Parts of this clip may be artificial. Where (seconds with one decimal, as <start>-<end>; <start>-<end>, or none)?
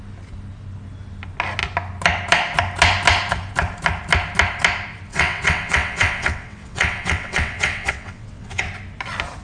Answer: 5.1-8.6